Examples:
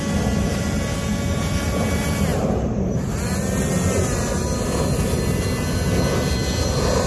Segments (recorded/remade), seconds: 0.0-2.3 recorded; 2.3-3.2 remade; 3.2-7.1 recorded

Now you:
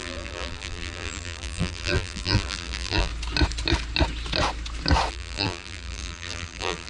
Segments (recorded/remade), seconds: 0.0-3.1 remade; 3.1-5.1 recorded; 5.1-6.9 remade

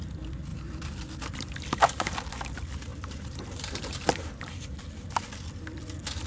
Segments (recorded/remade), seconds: 0.0-0.5 recorded; 0.5-1.0 remade; 1.0-2.9 recorded; 2.9-4.4 remade; 4.4-6.3 recorded

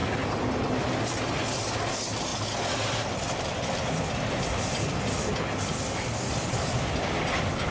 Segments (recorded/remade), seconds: 0.0-2.3 recorded; 2.3-6.9 remade; 6.9-7.7 recorded

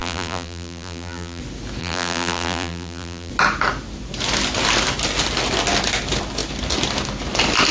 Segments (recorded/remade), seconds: 0.0-1.4 remade; 1.4-1.8 recorded; 1.8-3.3 remade; 3.3-7.7 recorded